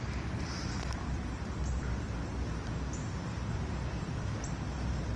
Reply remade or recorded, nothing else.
recorded